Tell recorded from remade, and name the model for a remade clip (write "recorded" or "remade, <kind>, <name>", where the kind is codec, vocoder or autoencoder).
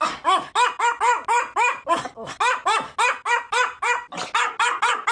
recorded